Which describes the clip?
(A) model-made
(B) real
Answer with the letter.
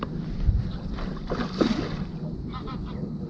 B